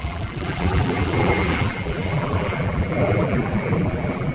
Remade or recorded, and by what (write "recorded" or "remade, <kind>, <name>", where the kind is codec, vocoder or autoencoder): remade, vocoder, BigVGAN v2